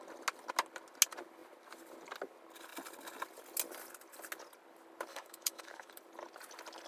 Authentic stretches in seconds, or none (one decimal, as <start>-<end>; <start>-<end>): 0.0-5.1; 5.9-6.9